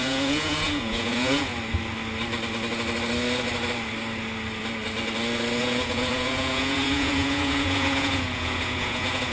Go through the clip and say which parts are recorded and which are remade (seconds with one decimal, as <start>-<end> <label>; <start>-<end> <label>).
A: 0.0-1.5 remade; 1.5-5.6 recorded; 5.6-9.3 remade

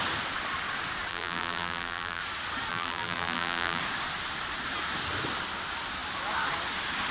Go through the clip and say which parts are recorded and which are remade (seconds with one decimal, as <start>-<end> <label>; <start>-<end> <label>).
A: 0.0-1.1 recorded; 1.1-2.2 remade; 2.2-2.7 recorded; 2.7-3.8 remade; 3.8-7.1 recorded

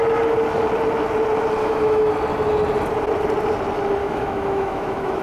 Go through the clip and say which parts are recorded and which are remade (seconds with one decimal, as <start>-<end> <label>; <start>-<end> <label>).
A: 0.0-1.6 recorded; 1.6-2.1 remade; 2.1-4.0 recorded; 4.0-5.2 remade

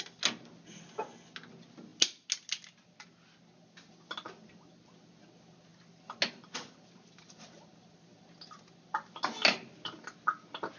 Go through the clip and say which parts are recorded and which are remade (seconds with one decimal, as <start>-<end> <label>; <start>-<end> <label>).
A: 0.0-10.8 recorded